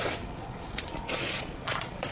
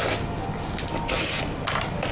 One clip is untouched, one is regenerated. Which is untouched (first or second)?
second